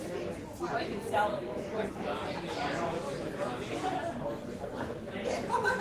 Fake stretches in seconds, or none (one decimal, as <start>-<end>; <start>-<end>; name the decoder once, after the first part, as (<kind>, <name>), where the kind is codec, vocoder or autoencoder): 1.3-1.9 (codec, SNAC); 4.4-5.1